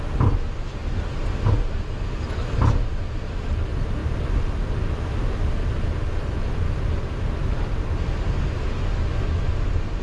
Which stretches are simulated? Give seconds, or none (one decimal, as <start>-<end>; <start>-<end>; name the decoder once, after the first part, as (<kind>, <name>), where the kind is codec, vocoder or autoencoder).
none